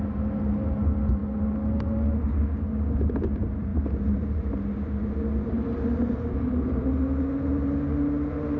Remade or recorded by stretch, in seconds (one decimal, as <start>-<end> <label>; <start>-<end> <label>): 0.0-8.6 recorded